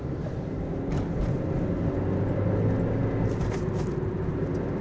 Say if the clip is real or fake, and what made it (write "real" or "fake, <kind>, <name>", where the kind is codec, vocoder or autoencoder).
real